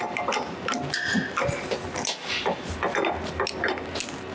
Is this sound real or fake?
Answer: real